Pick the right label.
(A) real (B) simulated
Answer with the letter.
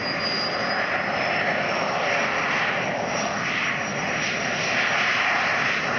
A